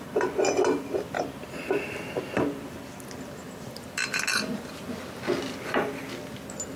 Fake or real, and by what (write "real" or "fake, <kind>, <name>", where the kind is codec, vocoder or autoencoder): real